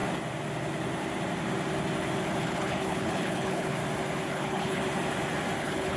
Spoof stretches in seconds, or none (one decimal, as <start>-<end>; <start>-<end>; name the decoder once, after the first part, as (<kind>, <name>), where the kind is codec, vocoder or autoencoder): 2.4-3.8 (codec, HILCodec); 4.3-4.8; 5.6-6.0